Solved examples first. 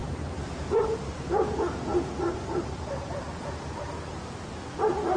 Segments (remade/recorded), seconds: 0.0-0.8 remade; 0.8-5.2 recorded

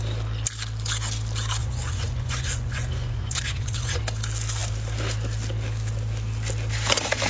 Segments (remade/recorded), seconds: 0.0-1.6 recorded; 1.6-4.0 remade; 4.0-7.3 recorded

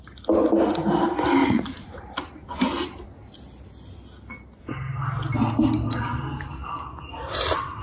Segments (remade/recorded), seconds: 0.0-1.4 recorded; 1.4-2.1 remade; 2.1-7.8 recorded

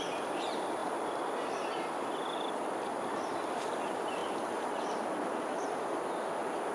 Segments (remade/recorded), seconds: 0.0-6.7 recorded